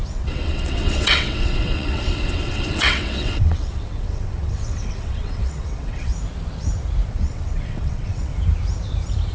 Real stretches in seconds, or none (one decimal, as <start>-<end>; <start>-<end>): 6.1-7.1; 8.3-9.3